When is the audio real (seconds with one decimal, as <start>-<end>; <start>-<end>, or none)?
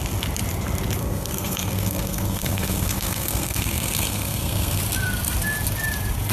0.0-1.0; 4.8-6.3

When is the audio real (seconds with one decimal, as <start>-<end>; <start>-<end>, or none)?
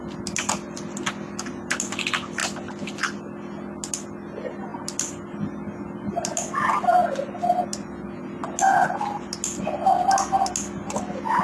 0.0-11.4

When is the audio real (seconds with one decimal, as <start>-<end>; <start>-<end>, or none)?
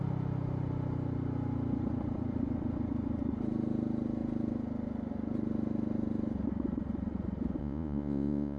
0.0-7.6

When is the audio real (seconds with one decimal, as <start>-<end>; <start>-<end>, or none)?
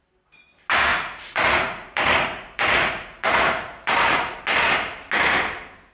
0.0-0.9; 4.4-5.9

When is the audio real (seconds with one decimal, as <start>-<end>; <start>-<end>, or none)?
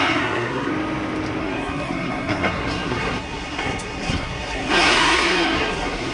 0.7-1.4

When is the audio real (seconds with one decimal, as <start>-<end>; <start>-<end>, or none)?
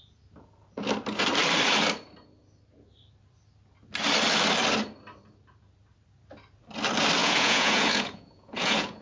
0.0-7.2